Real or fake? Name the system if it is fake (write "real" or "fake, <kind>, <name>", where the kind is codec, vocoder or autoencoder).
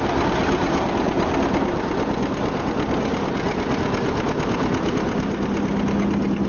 real